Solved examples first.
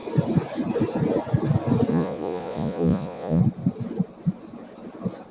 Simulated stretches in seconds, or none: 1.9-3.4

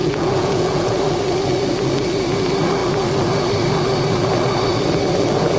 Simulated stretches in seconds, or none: 0.0-1.0

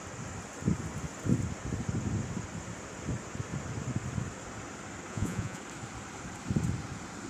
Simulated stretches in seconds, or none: 5.1-5.6

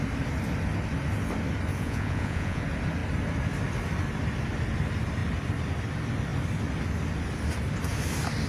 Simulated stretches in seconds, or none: 1.7-2.6

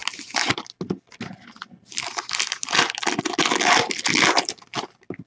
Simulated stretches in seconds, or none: none

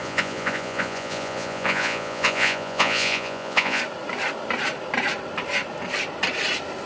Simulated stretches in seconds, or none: 0.0-3.8

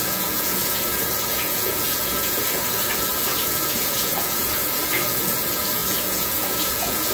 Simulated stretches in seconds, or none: 0.0-7.1